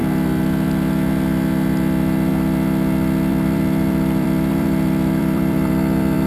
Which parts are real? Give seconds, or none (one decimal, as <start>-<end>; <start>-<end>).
0.0-3.3